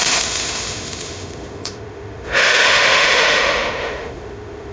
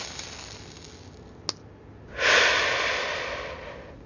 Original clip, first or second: second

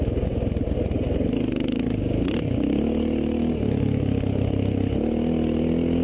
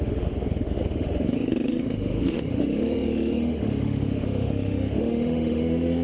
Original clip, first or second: first